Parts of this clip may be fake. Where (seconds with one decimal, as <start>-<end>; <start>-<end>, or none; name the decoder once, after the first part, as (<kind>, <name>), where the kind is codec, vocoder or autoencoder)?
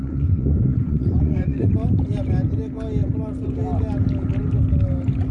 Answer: 0.0-1.7 (vocoder, Vocos)